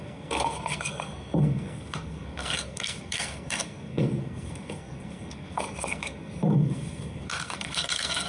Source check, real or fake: fake